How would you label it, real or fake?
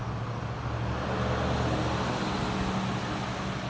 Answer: real